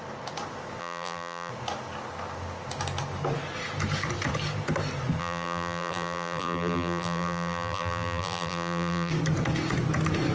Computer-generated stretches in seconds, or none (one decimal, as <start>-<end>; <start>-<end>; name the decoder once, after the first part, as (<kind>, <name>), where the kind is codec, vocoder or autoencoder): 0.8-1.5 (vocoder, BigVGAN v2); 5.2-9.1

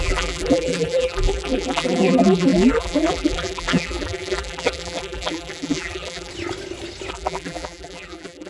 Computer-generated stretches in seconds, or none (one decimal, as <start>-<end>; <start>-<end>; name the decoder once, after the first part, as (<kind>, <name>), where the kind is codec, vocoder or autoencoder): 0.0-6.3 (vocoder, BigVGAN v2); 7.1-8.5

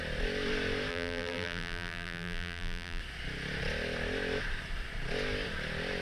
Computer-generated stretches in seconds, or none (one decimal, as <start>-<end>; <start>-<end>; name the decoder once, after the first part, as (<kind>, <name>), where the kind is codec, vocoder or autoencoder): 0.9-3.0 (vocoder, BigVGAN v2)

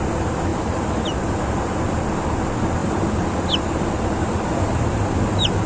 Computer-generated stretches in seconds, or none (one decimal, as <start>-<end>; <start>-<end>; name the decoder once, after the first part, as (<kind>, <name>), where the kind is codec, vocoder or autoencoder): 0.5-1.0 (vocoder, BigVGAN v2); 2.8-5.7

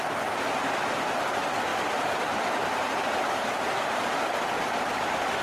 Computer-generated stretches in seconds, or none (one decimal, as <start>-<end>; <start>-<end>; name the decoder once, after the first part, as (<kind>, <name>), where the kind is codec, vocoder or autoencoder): 1.7-4.3 (vocoder, BigVGAN v2)

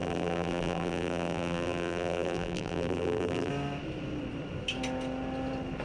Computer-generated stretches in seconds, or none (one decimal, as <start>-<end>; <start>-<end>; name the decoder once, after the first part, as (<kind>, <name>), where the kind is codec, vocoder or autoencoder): 0.0-3.5 (vocoder, BigVGAN v2)

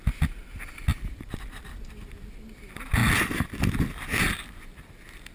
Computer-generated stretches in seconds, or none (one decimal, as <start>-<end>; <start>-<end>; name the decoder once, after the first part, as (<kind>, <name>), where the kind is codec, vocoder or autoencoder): 0.9-1.7 (vocoder, BigVGAN v2)